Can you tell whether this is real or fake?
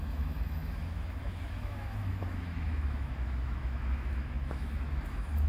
fake